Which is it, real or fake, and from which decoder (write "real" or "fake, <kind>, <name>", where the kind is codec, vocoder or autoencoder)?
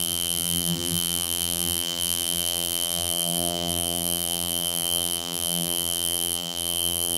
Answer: fake, vocoder, BigVGAN v2